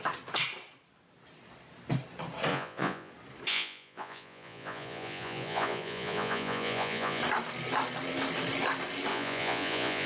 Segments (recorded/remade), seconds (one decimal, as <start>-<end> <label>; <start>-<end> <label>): 0.0-2.5 recorded; 2.5-3.1 remade; 3.1-3.5 recorded; 3.5-7.2 remade; 7.2-9.1 recorded; 9.1-10.1 remade